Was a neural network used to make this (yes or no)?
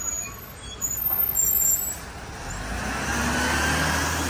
no